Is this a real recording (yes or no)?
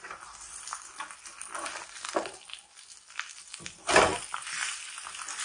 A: yes